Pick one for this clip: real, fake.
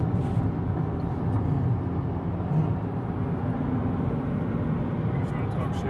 real